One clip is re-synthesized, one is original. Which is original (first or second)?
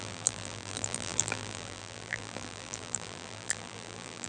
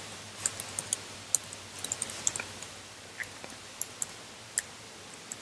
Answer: second